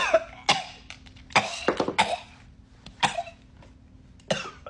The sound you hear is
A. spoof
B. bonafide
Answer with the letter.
B